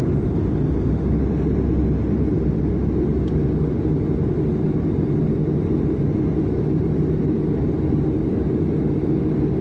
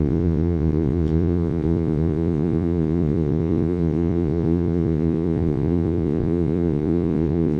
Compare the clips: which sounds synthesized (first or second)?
second